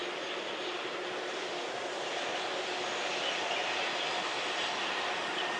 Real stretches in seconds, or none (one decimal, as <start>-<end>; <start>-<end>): 0.0-3.2